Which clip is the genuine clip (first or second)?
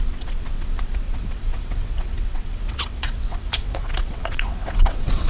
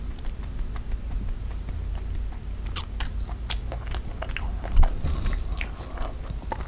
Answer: second